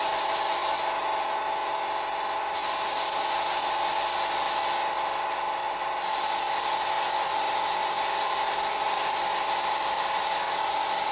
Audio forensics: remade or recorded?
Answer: recorded